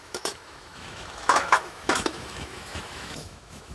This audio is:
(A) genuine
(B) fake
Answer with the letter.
B